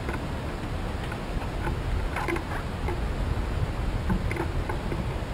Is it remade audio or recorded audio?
recorded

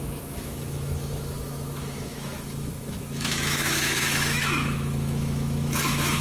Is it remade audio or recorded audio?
remade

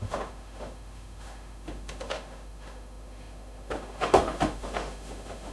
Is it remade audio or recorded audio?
remade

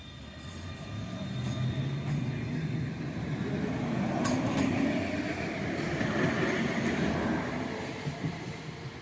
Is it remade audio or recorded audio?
recorded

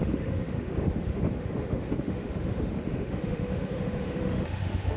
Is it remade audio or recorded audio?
remade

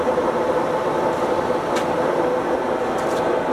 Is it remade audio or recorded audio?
recorded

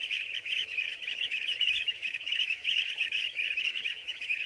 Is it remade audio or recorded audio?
remade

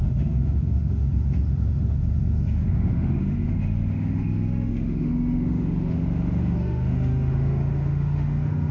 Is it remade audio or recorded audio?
remade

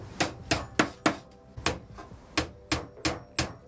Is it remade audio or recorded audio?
recorded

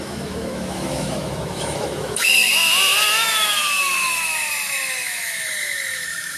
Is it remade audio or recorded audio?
remade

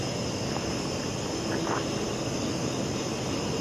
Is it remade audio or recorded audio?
recorded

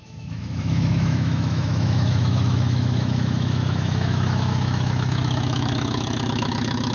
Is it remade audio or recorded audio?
remade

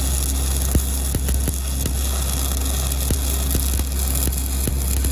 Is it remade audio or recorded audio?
recorded